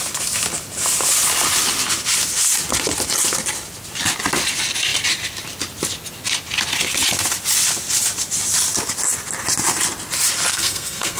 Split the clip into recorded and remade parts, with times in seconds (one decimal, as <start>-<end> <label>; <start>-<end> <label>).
0.0-10.5 recorded; 10.5-11.2 remade